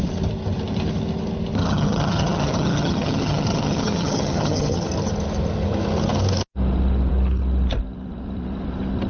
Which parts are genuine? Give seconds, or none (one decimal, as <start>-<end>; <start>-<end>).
0.0-1.6; 4.8-9.1